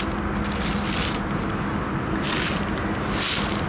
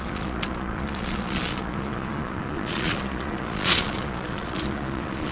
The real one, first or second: first